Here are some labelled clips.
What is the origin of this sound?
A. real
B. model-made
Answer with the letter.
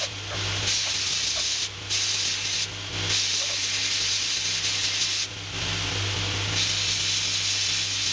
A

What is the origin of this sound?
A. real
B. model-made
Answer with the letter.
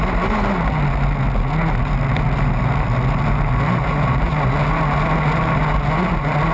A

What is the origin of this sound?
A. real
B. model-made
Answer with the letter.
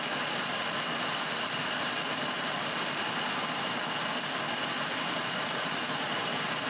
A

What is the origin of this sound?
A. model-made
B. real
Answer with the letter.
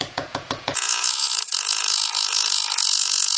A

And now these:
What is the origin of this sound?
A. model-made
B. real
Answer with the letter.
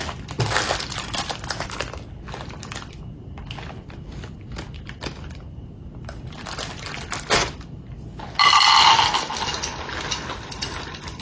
B